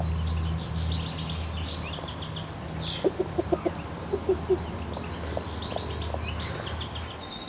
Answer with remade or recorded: recorded